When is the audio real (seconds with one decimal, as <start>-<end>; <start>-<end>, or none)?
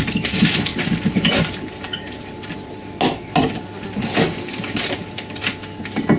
0.0-6.2